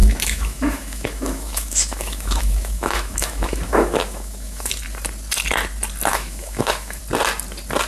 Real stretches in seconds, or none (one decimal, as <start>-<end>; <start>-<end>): 4.7-6.1; 7.0-7.9